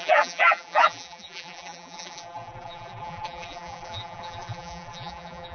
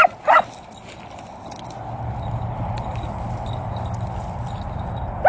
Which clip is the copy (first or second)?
first